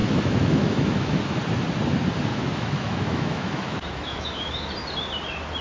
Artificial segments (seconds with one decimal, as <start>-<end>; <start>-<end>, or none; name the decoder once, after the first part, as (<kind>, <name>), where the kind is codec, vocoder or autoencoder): 0.0-1.4 (autoencoder, DAC-VAE); 2.3-4.7